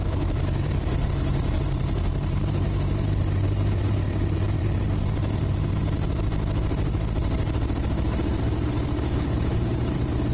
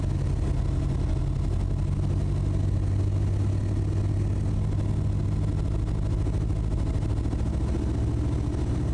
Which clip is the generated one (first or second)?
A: first